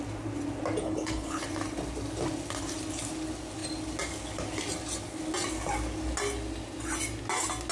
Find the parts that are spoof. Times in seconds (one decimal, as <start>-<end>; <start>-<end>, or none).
0.8-1.4